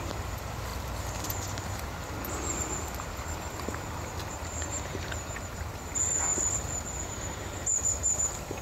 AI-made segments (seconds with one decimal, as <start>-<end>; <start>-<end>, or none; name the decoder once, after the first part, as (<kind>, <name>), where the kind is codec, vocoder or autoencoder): 0.0-0.7 (vocoder, BigVGAN v2); 5.1-8.6